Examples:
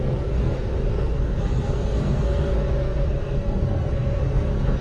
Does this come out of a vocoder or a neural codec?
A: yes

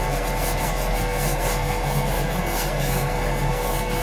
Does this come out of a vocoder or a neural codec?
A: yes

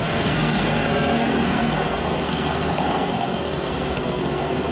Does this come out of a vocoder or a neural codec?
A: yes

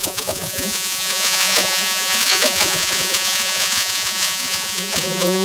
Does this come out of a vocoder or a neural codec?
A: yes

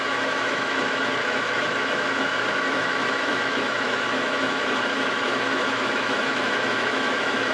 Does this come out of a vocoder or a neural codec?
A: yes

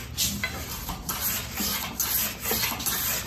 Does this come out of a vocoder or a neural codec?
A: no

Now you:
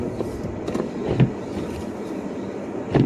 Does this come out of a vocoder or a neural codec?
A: no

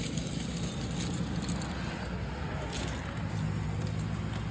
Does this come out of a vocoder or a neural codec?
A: no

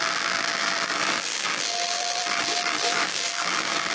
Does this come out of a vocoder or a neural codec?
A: yes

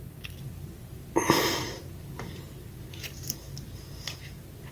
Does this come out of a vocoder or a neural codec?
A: no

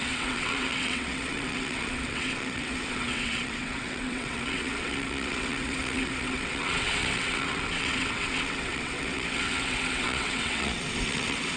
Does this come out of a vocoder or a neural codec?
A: yes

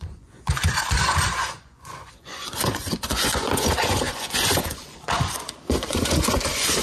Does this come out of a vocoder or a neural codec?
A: yes